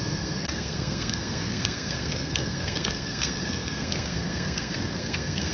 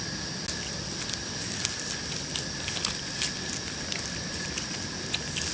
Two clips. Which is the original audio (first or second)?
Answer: second